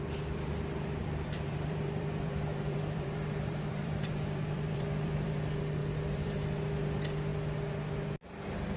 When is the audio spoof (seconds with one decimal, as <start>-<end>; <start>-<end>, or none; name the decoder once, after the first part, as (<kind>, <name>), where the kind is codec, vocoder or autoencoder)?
1.0-5.3 (vocoder, BigVGAN v2); 5.8-6.6